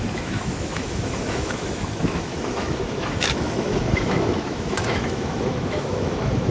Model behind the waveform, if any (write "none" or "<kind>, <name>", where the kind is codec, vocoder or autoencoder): autoencoder, DAC-VAE